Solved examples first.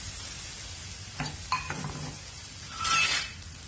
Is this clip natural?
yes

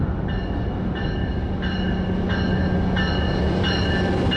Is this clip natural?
yes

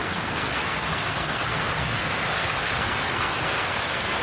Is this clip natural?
no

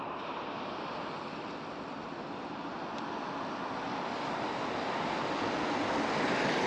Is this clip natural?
yes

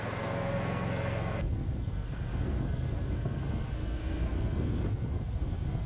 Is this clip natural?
no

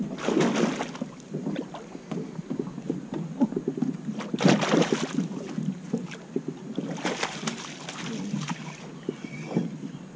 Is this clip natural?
yes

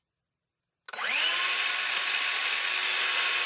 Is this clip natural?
yes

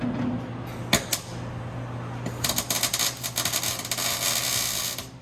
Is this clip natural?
yes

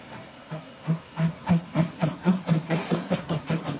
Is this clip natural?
no